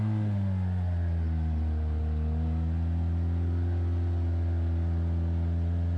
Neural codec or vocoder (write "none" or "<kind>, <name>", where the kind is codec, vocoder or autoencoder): none